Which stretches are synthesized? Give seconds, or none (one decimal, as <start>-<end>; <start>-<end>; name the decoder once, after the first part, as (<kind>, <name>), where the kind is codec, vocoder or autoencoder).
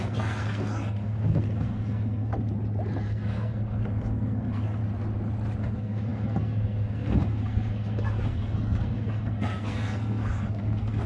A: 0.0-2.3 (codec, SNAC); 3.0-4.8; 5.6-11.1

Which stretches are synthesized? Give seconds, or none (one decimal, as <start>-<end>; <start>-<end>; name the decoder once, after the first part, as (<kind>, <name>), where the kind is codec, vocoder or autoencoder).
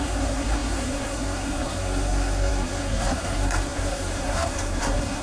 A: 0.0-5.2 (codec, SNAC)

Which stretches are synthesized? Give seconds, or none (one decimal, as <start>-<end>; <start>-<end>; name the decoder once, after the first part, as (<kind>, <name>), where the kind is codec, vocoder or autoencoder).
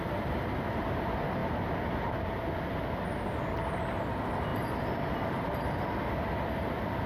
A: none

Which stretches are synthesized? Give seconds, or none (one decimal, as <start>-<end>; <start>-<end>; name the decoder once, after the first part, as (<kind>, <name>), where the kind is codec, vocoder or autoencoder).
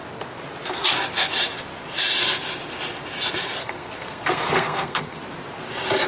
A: 3.6-5.2 (codec, SNAC)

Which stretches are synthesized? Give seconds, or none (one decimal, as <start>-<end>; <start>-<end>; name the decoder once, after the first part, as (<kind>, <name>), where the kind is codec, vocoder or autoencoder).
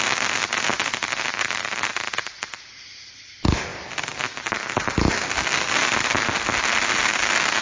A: none